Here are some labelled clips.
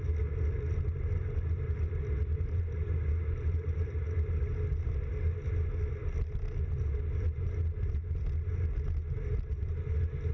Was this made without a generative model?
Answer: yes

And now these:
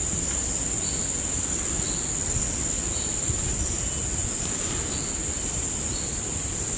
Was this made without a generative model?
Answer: yes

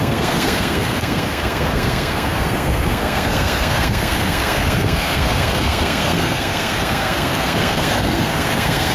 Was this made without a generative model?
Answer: no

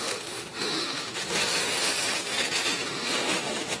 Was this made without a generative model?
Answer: no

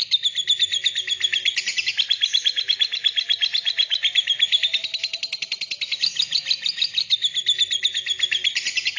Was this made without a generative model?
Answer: yes